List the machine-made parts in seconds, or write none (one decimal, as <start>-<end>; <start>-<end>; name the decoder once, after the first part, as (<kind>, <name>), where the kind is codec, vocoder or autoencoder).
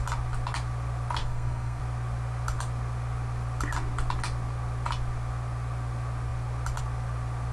1.2-1.8 (codec, SNAC)